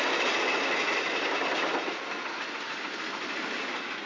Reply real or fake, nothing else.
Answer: real